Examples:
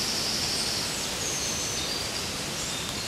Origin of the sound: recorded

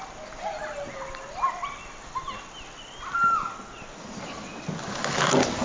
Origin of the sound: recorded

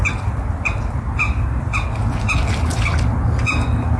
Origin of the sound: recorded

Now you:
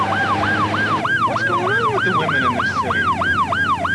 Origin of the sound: recorded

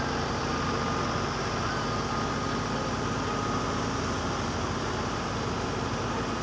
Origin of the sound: recorded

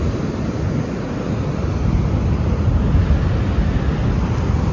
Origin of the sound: recorded